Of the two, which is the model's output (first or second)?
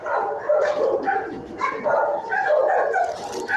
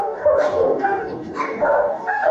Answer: second